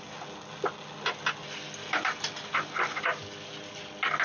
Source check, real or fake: real